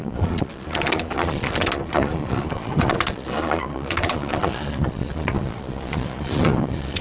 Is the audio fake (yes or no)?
yes